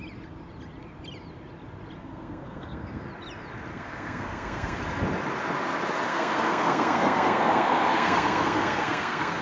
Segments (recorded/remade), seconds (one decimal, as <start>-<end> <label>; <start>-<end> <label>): 0.0-2.0 recorded; 2.0-3.0 remade; 3.0-3.7 recorded; 3.7-4.8 remade; 4.8-6.1 recorded; 6.1-9.4 remade